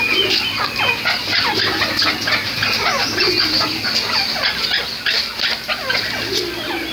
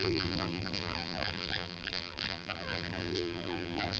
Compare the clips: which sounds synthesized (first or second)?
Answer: second